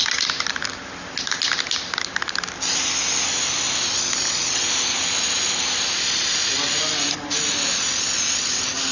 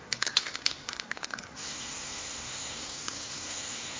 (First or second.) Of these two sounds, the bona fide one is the first